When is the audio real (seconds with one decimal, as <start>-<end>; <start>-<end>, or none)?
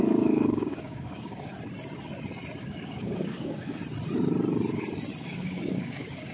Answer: 1.5-2.6; 3.8-5.2